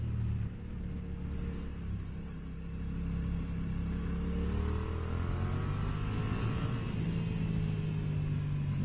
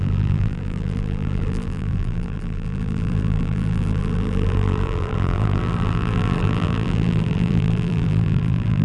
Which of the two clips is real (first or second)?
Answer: first